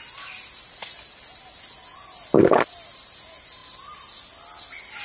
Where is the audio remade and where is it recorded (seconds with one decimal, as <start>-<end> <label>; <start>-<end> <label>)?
0.0-5.0 recorded